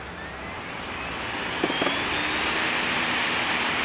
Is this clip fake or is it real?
real